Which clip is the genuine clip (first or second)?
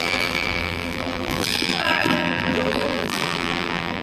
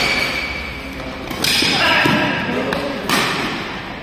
second